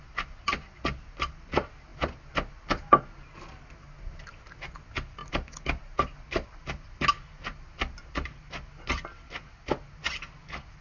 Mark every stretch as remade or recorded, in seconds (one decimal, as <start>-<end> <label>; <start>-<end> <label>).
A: 0.0-10.8 recorded